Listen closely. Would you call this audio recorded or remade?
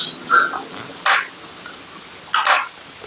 recorded